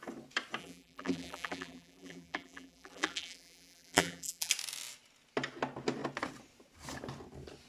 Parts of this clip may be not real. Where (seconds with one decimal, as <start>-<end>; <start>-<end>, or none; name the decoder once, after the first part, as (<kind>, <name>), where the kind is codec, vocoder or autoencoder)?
0.6-4.5 (vocoder, BigVGAN v2)